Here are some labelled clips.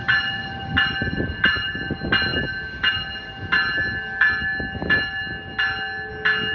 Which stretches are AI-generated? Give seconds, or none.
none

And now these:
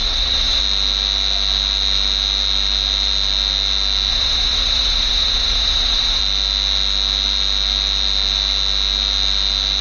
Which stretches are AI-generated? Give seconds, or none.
0.0-0.6; 4.1-6.2

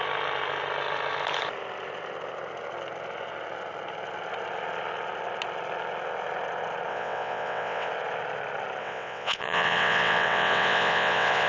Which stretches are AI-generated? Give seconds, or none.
6.9-7.9; 8.8-11.5

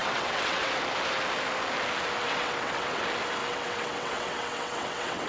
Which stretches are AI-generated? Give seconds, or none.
0.0-0.7; 2.2-3.0; 3.4-5.3

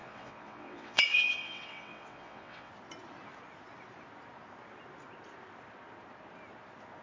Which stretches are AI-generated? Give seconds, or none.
0.0-2.7

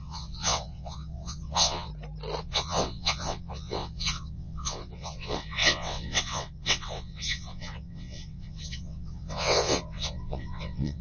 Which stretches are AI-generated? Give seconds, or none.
0.0-1.9; 2.4-11.0

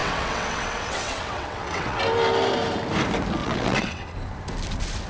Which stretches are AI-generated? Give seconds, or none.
0.0-2.0; 3.4-4.1